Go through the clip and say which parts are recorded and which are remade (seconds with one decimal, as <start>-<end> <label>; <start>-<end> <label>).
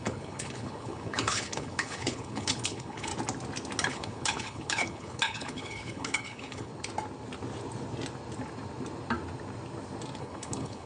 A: 0.0-3.1 remade; 3.1-3.9 recorded; 3.9-6.7 remade; 6.7-10.2 recorded; 10.2-10.9 remade